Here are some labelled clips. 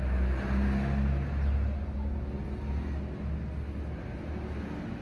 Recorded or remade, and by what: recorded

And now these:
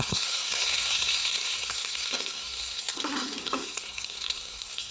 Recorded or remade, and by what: remade, codec, SNAC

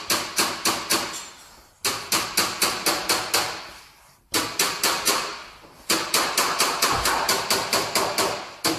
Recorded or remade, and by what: recorded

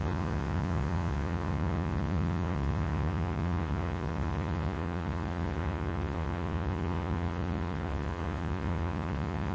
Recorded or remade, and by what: remade, vocoder, Vocos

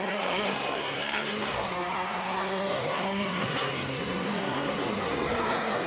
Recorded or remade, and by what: remade, codec, SNAC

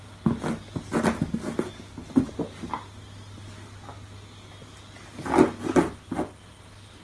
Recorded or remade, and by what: recorded